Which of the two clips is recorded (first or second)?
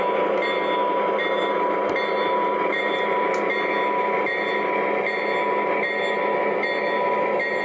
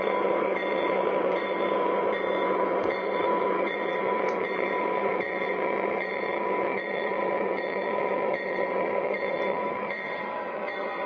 first